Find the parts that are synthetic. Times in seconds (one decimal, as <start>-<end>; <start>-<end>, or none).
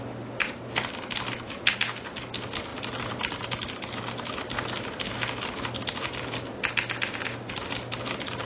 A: none